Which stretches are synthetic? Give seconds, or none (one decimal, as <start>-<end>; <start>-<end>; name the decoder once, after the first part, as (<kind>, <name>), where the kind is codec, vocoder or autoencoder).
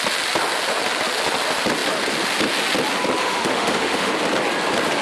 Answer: 3.2-4.1 (autoencoder, DAC-VAE)